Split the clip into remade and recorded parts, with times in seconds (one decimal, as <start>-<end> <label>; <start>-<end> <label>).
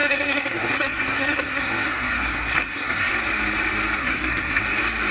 0.0-3.1 remade; 3.1-4.0 recorded; 4.0-4.6 remade; 4.6-5.1 recorded